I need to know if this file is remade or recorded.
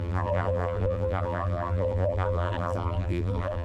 remade